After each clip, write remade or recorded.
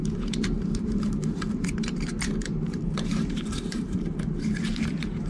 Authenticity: remade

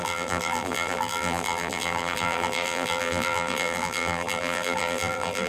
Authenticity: remade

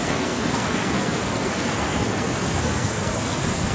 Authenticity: remade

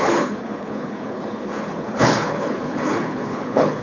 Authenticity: remade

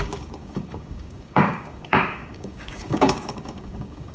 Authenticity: remade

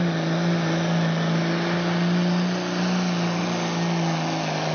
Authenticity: recorded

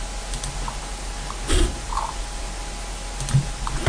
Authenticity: recorded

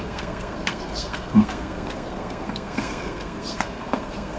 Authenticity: remade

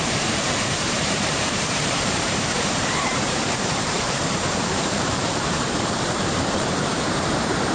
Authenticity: remade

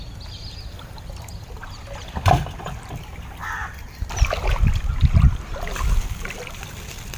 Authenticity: recorded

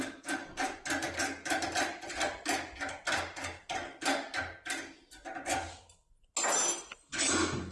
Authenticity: recorded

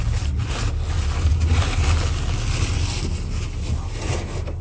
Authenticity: recorded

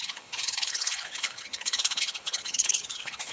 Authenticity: remade